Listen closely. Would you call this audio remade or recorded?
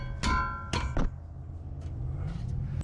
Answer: recorded